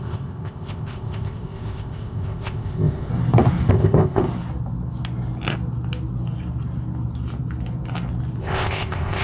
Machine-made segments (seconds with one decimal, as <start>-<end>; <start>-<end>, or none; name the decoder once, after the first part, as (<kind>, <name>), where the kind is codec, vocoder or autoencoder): 0.0-3.1 (codec, ZipCodec); 3.7-4.2; 8.4-9.2